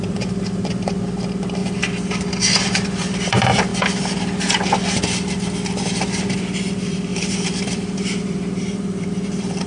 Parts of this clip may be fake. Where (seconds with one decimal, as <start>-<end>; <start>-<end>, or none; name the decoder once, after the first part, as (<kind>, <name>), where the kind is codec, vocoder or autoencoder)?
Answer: 0.0-1.6 (vocoder, BigVGAN v2); 2.3-3.7; 6.4-9.7